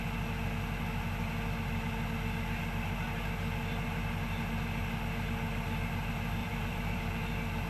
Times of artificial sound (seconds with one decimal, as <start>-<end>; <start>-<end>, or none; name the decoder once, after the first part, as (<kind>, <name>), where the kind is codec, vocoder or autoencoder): 6.4-7.0 (vocoder, BigVGAN v2)